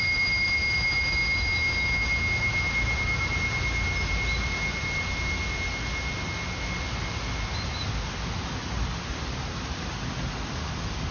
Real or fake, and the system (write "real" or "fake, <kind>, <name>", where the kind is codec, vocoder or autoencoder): real